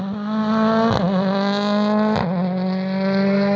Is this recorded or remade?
recorded